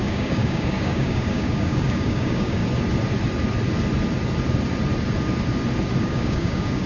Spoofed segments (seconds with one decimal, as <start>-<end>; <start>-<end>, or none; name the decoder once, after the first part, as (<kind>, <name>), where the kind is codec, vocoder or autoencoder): 0.0-2.6 (codec, DAC); 6.0-6.9